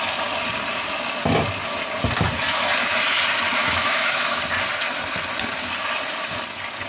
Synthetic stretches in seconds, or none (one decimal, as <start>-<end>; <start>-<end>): 3.6-4.4